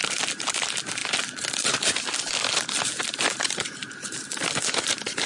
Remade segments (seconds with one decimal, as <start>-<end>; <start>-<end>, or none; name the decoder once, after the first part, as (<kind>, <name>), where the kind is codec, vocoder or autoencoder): none

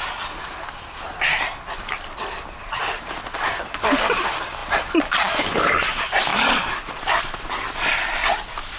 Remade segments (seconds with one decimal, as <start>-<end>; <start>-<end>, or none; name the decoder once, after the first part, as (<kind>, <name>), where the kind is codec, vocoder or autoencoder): none